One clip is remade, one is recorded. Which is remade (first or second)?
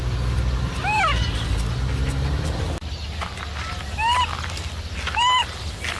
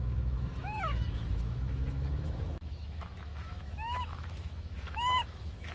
second